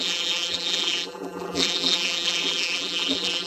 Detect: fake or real fake